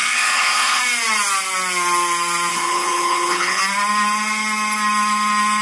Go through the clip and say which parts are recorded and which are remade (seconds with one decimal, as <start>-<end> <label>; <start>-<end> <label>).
0.0-0.8 remade; 0.8-2.5 recorded; 2.5-3.6 remade; 3.6-5.6 recorded